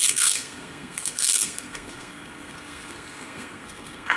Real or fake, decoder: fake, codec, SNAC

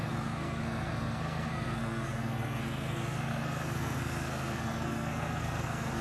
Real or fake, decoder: fake, codec, SNAC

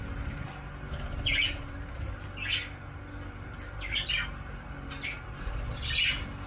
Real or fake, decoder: real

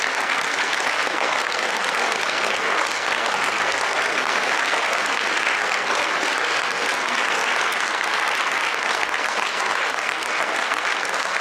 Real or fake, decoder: fake, codec, SNAC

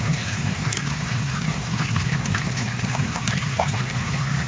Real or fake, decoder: fake, codec, SNAC